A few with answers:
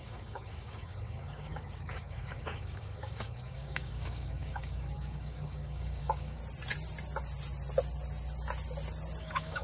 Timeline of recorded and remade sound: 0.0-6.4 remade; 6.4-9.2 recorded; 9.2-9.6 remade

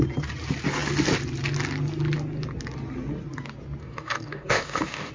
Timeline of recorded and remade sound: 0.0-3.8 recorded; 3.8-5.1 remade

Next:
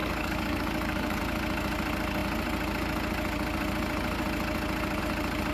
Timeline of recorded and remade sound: 0.0-1.2 remade; 1.2-5.5 recorded